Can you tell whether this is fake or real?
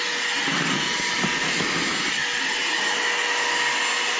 real